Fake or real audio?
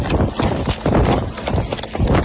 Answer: real